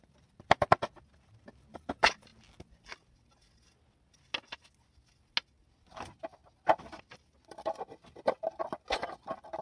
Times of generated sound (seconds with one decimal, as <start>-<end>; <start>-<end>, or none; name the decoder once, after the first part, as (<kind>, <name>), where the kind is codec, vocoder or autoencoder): 0.0-2.3 (vocoder, BigVGAN v2); 5.9-6.4; 9.0-9.6